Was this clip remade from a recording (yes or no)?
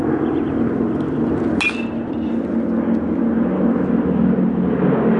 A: no